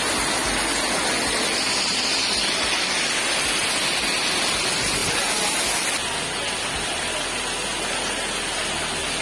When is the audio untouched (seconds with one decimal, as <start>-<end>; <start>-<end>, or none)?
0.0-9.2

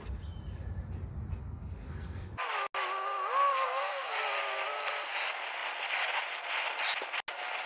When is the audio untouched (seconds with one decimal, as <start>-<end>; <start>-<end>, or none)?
0.0-1.4; 2.3-3.5; 4.2-7.7

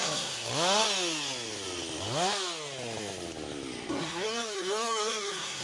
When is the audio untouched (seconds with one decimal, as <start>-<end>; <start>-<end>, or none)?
0.5-3.9

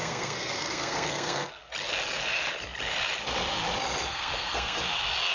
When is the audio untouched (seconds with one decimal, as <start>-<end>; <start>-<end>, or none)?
1.7-4.1; 4.8-5.3

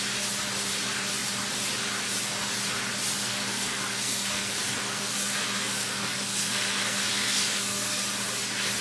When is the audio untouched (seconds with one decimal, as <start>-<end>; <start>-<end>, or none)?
0.0-3.2; 8.0-8.8